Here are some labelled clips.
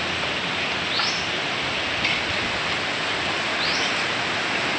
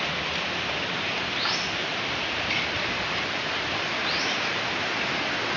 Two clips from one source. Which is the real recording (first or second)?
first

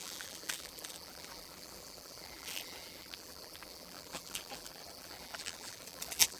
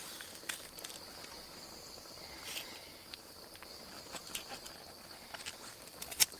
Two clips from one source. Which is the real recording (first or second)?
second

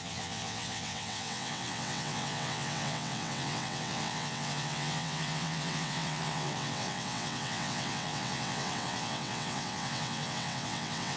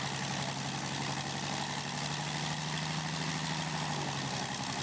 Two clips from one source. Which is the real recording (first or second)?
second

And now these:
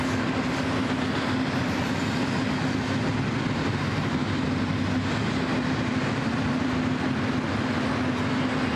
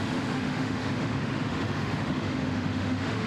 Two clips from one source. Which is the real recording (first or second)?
first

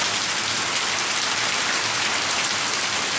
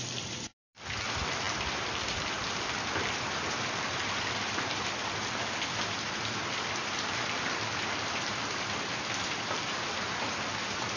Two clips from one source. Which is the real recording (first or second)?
first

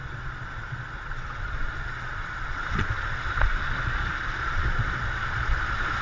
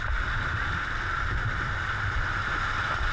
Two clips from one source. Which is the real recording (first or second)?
second